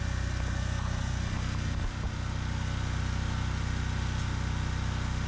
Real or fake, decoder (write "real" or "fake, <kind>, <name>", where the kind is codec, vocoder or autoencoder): real